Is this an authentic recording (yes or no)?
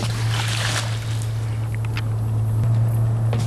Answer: yes